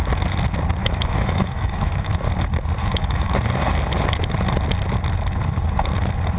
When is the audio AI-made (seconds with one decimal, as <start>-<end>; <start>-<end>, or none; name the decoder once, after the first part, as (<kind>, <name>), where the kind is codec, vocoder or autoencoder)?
0.8-2.2 (autoencoder, DAC-VAE); 2.8-3.3